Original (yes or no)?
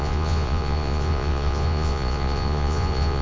no